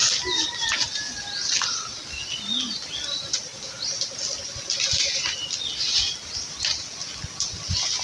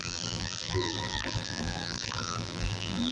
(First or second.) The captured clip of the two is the first